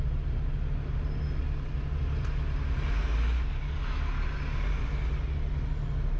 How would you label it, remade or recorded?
recorded